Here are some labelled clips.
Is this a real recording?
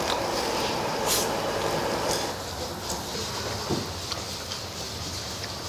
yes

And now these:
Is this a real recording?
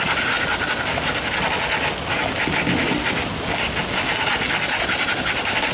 yes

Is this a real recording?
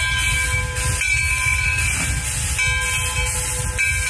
yes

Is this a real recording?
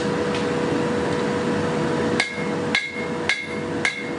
yes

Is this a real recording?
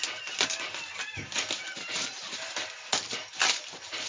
yes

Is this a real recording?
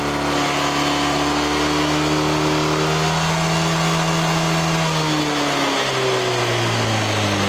yes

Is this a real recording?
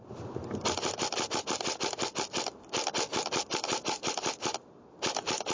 yes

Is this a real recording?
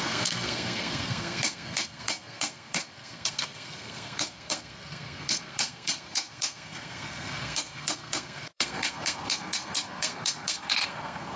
no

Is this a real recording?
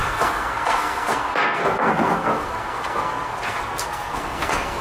no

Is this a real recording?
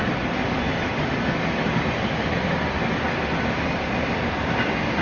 yes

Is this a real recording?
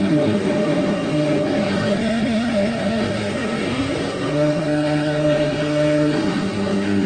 no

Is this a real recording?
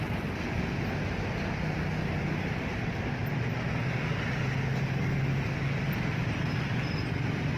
yes